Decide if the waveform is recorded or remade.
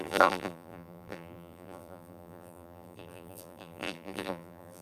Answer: remade